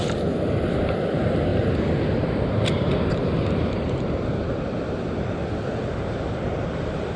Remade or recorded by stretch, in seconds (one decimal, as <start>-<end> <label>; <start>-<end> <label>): 0.0-1.5 remade; 1.5-3.8 recorded; 3.8-7.2 remade